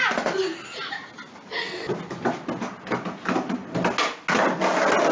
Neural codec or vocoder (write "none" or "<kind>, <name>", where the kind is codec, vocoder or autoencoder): none